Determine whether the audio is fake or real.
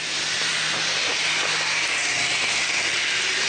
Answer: real